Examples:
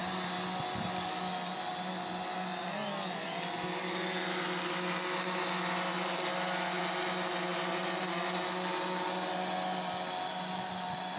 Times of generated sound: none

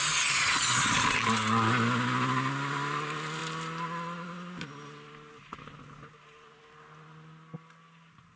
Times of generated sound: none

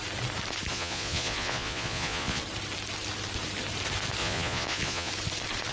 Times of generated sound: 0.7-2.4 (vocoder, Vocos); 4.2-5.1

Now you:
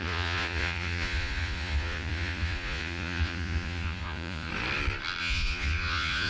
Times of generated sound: 0.0-4.5 (vocoder, Vocos); 5.2-6.3

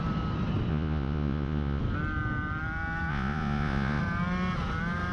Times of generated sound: 0.7-1.8 (vocoder, Vocos); 3.1-4.0

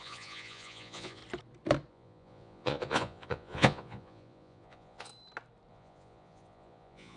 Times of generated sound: 0.0-1.2 (vocoder, Vocos); 1.9-5.1; 5.7-7.2